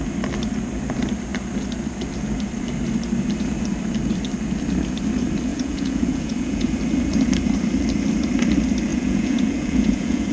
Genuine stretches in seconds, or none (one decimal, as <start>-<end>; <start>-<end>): 0.0-5.5; 6.7-8.9